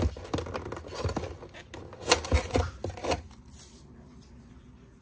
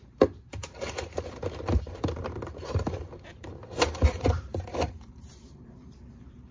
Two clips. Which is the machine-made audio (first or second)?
second